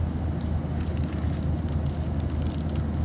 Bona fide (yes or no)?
yes